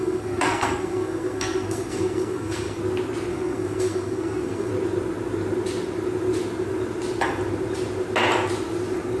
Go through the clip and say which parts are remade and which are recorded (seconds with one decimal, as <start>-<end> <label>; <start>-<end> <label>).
0.0-2.8 remade; 2.8-3.3 recorded; 3.3-4.7 remade; 4.7-9.2 recorded